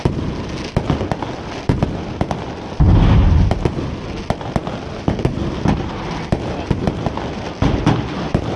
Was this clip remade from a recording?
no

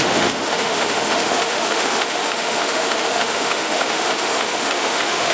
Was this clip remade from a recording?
yes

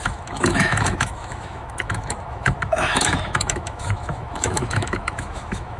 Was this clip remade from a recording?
yes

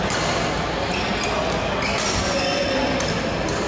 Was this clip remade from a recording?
no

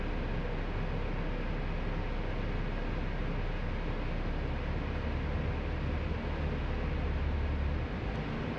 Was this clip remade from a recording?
no